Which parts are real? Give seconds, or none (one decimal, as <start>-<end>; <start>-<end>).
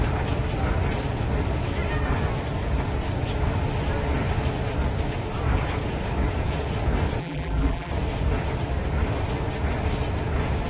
0.0-7.2; 7.9-10.7